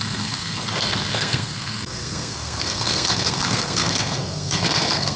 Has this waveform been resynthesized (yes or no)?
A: yes